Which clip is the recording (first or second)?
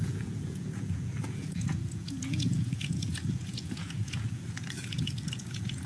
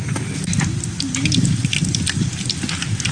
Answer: second